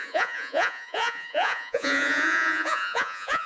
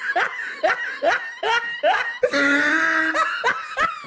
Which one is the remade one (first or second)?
first